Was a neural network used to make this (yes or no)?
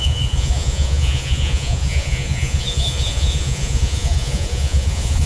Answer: yes